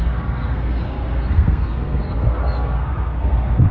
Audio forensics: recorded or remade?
remade